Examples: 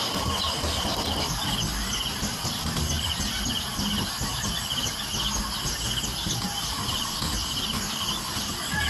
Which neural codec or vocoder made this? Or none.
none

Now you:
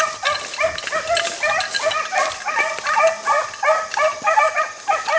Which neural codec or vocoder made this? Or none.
none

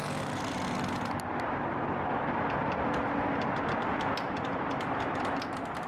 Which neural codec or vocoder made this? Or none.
none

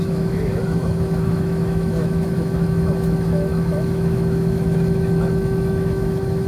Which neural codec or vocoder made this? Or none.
autoencoder, DAC-VAE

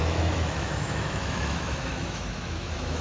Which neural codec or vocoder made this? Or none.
autoencoder, DAC-VAE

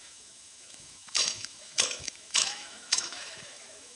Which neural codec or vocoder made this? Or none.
autoencoder, DAC-VAE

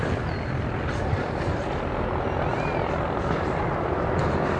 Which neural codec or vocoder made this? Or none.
none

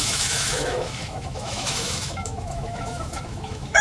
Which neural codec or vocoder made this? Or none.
autoencoder, DAC-VAE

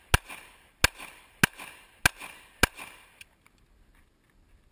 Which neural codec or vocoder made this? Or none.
none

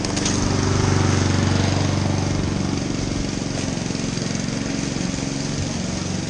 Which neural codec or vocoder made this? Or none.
none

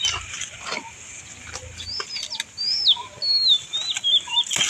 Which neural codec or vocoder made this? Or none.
none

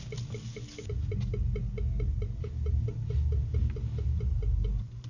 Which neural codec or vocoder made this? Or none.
none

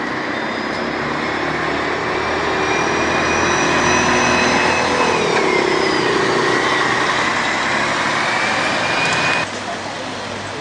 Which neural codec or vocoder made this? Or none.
none